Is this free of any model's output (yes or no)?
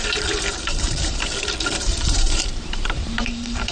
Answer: no